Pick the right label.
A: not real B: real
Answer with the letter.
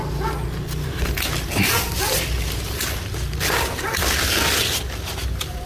B